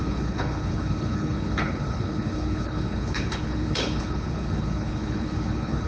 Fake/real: fake